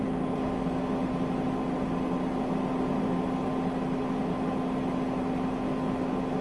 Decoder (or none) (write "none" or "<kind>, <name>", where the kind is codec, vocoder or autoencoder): none